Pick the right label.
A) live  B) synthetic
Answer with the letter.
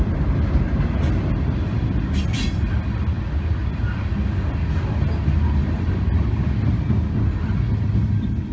A